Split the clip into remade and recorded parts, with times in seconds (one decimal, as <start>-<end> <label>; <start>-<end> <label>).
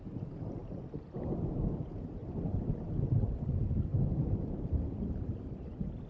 0.0-0.6 recorded; 0.6-1.2 remade; 1.2-2.2 recorded; 2.2-6.1 remade